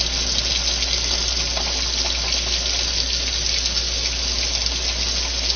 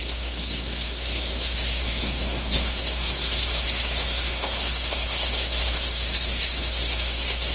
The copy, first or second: second